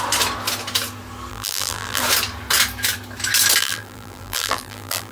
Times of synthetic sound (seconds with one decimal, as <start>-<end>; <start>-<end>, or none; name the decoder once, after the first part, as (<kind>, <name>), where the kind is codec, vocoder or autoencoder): 1.3-2.0 (vocoder, BigVGAN v2); 3.6-5.1